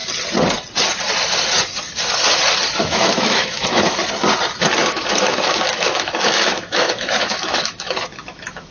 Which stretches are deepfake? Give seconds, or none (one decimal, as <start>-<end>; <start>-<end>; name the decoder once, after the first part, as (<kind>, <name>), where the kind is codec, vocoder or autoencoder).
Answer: 2.8-4.0 (autoencoder, DAC-VAE); 4.8-8.7